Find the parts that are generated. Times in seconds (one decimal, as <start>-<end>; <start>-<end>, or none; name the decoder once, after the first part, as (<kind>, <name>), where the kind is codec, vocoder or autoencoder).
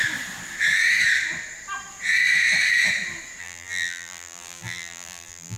3.4-5.6 (vocoder, BigVGAN v2)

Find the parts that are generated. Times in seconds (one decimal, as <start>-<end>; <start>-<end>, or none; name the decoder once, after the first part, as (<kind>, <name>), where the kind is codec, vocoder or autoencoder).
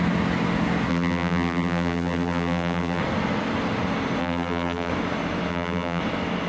0.9-3.0 (vocoder, BigVGAN v2); 4.2-4.9; 5.5-6.0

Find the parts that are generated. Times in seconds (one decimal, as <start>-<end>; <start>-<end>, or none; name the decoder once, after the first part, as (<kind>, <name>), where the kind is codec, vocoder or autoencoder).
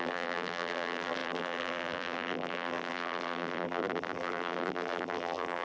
0.0-5.6 (vocoder, BigVGAN v2)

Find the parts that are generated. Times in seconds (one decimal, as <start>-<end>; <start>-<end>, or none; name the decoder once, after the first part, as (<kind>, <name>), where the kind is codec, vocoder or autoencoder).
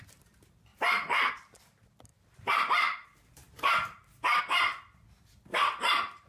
0.7-1.3 (vocoder, BigVGAN v2); 2.1-4.4; 5.5-6.3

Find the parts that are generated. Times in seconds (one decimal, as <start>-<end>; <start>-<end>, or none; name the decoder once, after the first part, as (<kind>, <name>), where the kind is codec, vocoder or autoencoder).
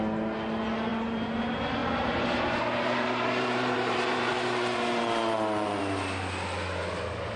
0.9-1.4 (vocoder, BigVGAN v2); 1.8-5.8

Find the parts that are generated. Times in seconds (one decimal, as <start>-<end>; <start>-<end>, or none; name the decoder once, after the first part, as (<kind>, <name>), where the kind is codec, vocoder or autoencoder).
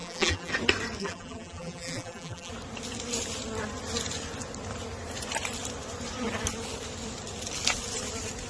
0.0-0.5 (vocoder, BigVGAN v2); 1.0-2.5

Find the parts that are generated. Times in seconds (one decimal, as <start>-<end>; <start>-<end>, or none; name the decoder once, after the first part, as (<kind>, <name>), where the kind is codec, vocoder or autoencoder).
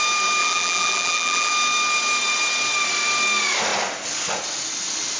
0.4-1.5 (vocoder, BigVGAN v2)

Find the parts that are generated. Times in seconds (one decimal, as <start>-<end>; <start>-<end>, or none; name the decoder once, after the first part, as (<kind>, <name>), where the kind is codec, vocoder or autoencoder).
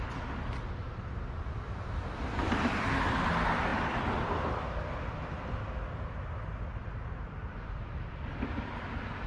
none